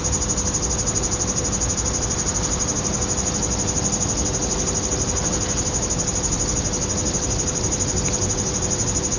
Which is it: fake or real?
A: real